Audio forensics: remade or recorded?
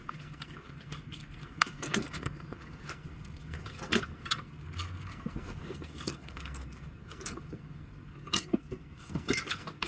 remade